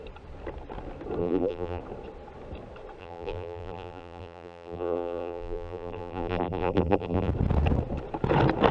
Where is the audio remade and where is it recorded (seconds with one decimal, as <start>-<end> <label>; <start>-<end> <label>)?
0.0-1.2 recorded; 1.2-1.8 remade; 1.8-3.0 recorded; 3.0-7.3 remade; 7.3-8.7 recorded